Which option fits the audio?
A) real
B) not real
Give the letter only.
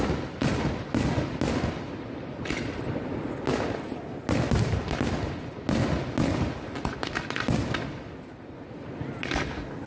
A